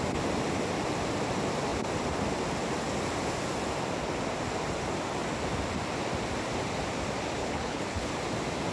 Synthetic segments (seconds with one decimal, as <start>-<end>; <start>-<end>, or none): 7.4-8.1